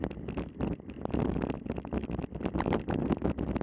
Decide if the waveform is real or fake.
real